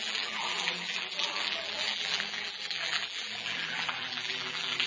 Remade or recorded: remade